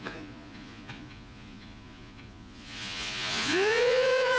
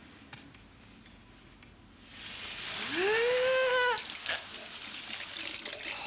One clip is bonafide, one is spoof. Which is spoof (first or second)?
first